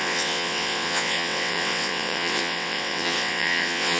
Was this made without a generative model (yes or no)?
no